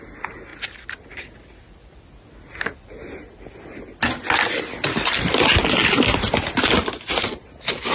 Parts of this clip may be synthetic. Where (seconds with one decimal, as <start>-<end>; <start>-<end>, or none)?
none